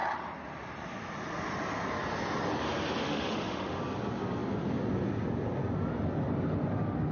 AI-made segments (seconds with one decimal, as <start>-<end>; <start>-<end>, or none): 3.0-3.8